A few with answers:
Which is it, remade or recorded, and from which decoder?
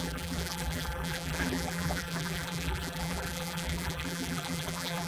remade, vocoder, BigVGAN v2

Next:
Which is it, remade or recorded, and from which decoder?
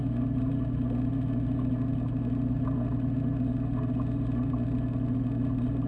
recorded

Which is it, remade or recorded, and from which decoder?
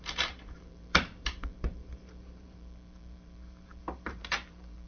remade, vocoder, BigVGAN v2